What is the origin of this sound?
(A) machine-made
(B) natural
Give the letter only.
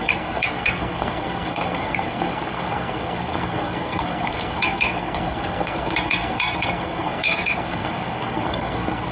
A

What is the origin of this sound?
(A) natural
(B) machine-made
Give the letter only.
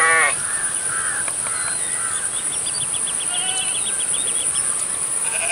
A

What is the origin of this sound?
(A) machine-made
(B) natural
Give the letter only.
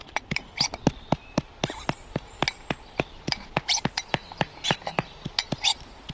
B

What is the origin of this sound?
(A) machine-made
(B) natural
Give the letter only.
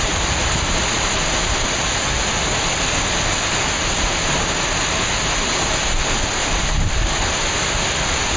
B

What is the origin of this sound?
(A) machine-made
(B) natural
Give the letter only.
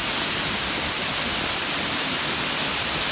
B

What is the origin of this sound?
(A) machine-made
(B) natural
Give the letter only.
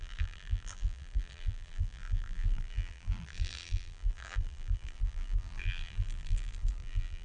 A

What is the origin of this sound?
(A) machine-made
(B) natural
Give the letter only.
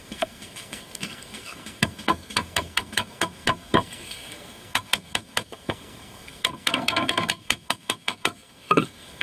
A